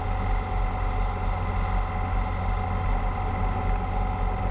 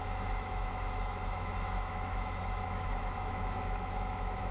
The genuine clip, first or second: first